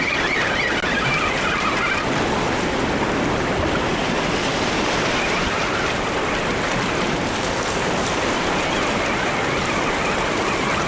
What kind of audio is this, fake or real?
real